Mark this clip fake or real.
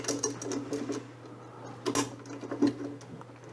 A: real